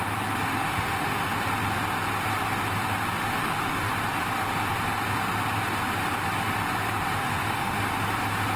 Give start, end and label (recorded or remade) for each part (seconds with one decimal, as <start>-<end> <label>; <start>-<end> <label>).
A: 0.0-0.5 recorded; 0.5-1.3 remade; 1.3-3.3 recorded; 3.3-3.9 remade; 3.9-7.0 recorded; 7.0-7.8 remade; 7.8-8.6 recorded